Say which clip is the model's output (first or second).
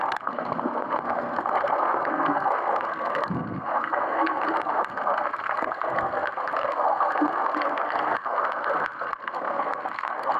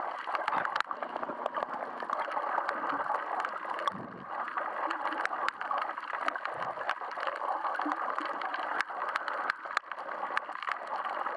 first